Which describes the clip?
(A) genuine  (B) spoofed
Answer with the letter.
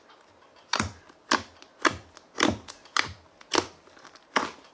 A